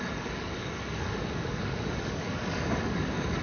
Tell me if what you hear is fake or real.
fake